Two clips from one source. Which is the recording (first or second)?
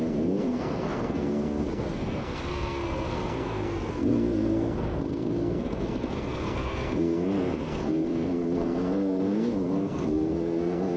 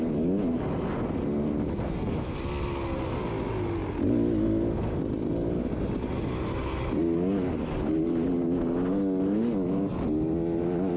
second